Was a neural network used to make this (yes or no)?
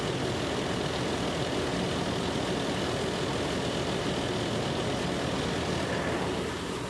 no